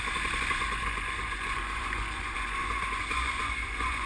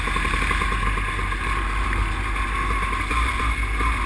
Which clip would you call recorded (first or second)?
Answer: second